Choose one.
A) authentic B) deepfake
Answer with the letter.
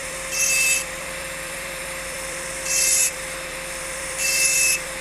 B